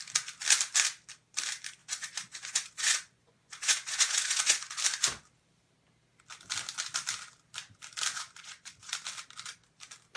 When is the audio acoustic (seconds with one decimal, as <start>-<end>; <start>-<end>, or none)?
0.0-1.8; 4.8-8.1; 8.9-10.2